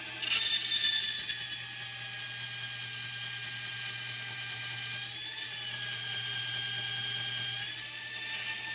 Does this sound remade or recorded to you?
recorded